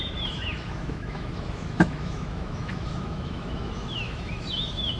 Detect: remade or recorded remade